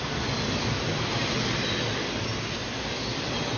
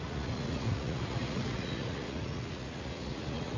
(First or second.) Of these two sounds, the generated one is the second